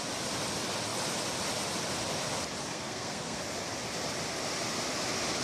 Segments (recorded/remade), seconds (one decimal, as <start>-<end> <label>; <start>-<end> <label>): 0.0-2.7 recorded; 2.7-3.4 remade; 3.4-5.4 recorded